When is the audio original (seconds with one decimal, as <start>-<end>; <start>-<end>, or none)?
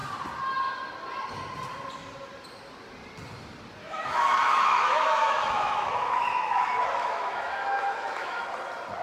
0.0-3.8; 8.4-9.0